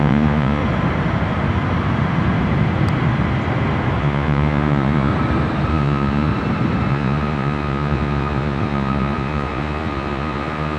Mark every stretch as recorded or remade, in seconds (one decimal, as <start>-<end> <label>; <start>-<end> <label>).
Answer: 0.0-0.6 remade; 0.6-4.0 recorded; 4.0-5.1 remade; 5.1-5.7 recorded; 5.7-6.3 remade; 6.3-6.9 recorded; 6.9-10.8 remade

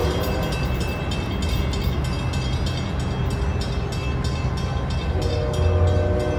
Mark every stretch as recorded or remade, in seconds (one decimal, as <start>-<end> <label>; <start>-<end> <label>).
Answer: 0.0-6.4 recorded